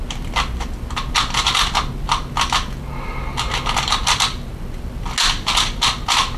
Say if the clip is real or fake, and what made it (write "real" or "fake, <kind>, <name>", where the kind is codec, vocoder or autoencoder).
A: real